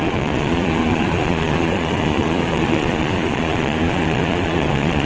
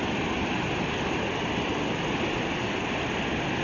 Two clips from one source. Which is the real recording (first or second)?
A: second